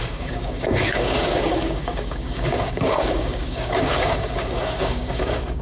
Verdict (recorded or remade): remade